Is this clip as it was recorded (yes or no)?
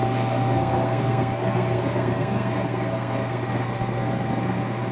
no